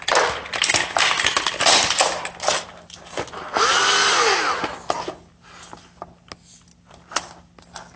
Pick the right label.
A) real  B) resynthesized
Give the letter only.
A